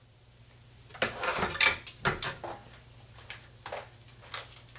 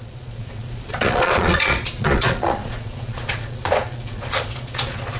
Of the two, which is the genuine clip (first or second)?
first